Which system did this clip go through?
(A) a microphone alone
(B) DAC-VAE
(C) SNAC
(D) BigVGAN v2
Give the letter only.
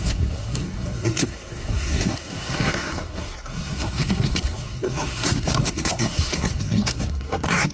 C